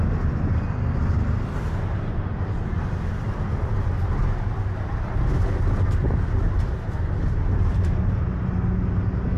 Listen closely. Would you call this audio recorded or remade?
recorded